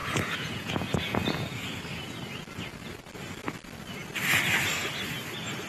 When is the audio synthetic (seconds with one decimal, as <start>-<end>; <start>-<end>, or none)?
0.0-2.2